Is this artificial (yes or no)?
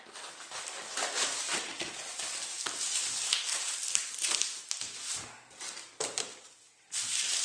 no